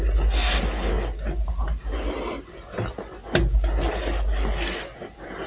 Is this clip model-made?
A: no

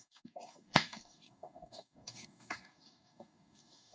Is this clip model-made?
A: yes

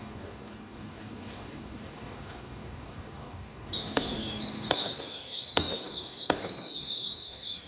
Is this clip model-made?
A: yes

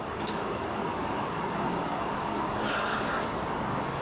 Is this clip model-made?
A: yes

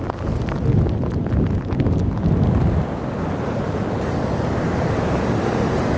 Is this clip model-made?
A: no